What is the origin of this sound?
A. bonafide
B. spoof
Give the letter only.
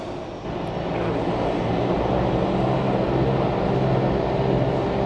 A